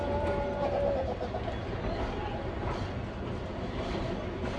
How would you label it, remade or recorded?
recorded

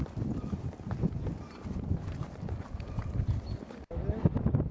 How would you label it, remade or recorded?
remade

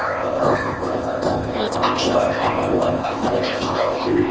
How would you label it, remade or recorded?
remade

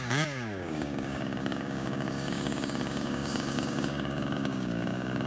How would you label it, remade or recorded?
remade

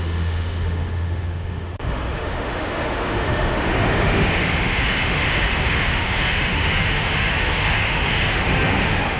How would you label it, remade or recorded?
remade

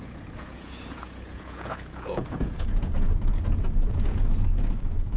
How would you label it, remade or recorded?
remade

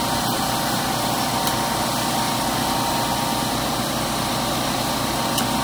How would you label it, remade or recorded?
recorded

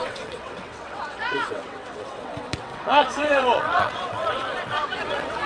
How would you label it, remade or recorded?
remade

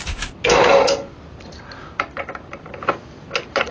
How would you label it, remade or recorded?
recorded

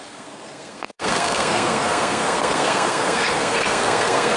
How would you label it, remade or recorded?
remade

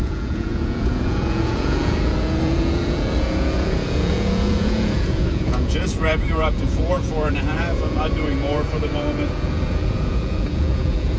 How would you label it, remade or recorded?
remade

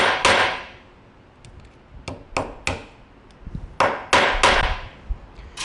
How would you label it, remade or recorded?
recorded